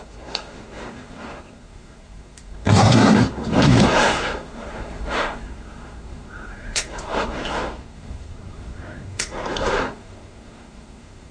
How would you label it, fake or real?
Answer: fake